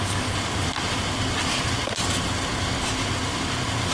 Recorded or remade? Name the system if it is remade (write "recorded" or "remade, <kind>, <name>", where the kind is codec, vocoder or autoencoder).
recorded